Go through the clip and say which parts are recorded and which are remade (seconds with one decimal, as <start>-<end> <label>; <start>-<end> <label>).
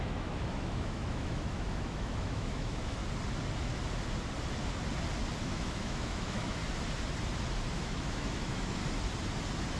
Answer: 0.0-3.0 remade; 3.0-5.4 recorded; 5.4-6.6 remade; 6.6-7.7 recorded; 7.7-8.8 remade; 8.8-9.8 recorded